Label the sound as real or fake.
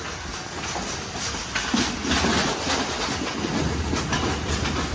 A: real